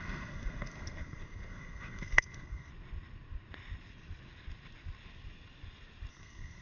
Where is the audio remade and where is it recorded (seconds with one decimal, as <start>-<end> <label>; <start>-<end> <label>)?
0.0-2.7 remade; 2.7-6.1 recorded; 6.1-6.6 remade